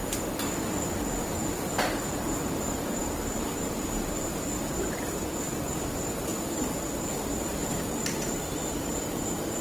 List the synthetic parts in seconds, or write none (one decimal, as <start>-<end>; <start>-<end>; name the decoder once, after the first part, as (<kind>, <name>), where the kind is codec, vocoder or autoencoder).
1.8-6.3 (vocoder, BigVGAN v2); 7.7-9.6